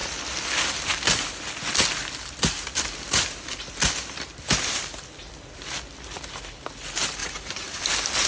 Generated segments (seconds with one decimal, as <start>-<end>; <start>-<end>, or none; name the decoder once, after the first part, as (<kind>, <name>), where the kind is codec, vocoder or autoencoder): 7.2-7.8 (vocoder, Vocos)